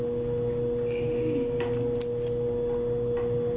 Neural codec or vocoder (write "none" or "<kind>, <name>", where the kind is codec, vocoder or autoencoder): none